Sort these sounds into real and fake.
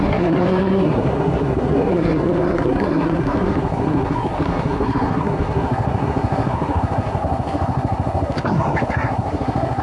fake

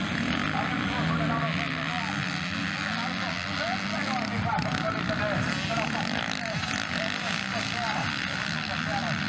real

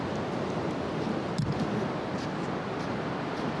real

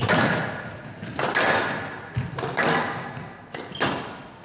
real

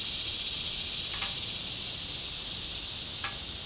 real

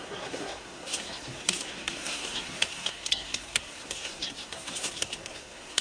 fake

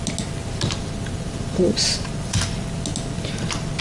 real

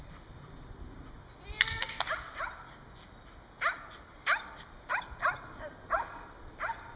real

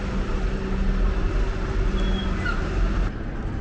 real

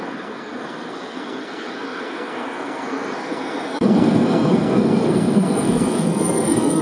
fake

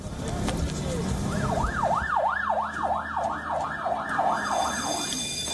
real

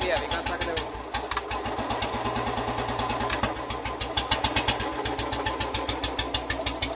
real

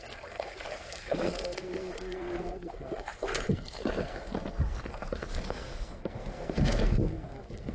fake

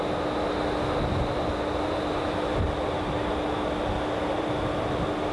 real